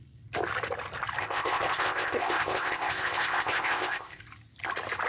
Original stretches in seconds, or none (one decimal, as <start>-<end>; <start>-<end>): 0.0-1.2; 4.2-5.1